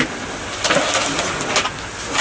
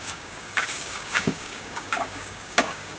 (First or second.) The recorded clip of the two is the first